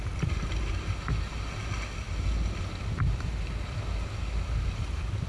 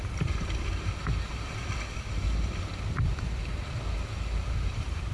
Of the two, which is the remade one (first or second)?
second